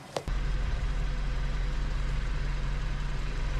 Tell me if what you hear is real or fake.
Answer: fake